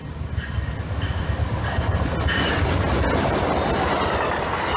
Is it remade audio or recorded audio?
recorded